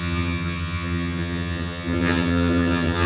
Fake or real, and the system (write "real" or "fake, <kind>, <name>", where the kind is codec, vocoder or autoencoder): fake, vocoder, HiFi-GAN